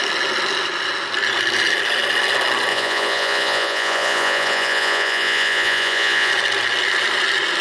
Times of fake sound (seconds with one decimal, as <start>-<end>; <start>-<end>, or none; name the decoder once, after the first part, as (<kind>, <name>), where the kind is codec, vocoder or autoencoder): 2.7-6.3 (vocoder, Vocos)